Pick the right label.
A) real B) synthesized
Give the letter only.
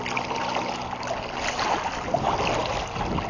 A